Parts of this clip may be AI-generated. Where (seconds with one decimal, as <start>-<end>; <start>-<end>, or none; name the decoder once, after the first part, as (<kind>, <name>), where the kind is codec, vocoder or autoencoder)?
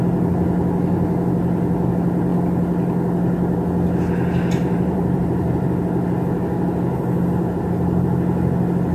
4.6-5.7 (vocoder, BigVGAN v2)